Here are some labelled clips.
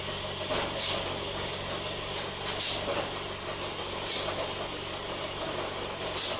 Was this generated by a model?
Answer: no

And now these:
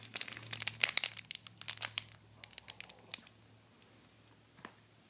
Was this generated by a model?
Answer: no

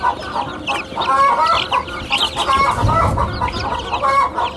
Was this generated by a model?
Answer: no